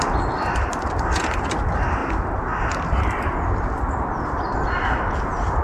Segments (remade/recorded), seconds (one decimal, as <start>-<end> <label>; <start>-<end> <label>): 0.0-5.6 recorded

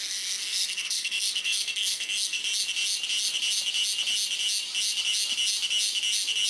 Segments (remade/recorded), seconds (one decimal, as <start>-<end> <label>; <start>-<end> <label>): 0.0-2.4 remade; 2.4-6.5 recorded